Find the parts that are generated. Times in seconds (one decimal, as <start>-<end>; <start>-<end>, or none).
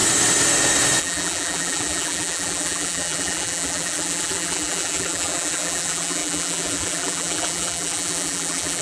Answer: 1.0-8.8